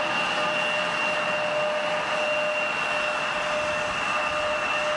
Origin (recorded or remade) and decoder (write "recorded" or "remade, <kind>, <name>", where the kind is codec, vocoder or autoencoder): recorded